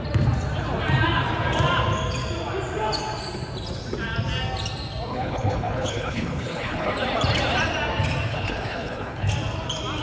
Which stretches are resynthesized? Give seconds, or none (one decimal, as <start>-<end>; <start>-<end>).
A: 5.1-6.9; 8.3-9.3